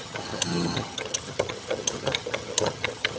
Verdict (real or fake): fake